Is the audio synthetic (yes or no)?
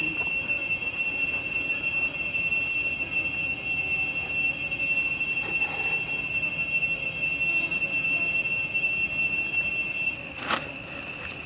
no